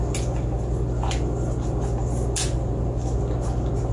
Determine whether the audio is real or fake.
real